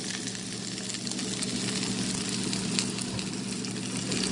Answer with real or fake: real